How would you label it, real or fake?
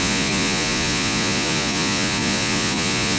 fake